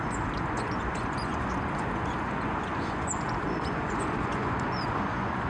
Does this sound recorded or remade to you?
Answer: remade